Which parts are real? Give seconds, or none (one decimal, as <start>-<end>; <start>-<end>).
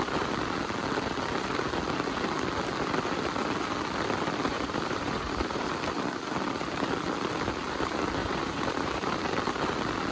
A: 0.0-4.5; 5.7-8.2; 9.2-10.1